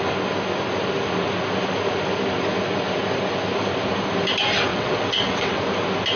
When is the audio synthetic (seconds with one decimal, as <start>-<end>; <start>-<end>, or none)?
4.7-5.6